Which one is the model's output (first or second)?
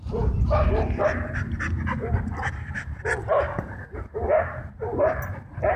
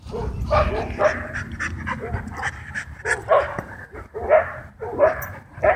second